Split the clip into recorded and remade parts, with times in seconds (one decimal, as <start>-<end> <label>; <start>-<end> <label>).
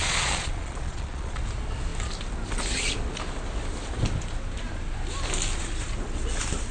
0.0-1.4 remade; 1.4-6.7 recorded